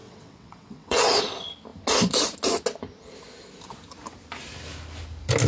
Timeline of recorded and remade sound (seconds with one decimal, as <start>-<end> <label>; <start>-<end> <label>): 0.0-1.2 remade; 1.2-5.5 recorded